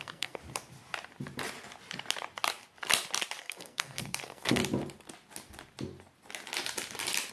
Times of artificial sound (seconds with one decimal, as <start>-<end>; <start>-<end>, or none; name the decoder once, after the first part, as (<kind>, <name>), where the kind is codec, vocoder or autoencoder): 0.0-0.4 (codec, SNAC); 3.4-4.6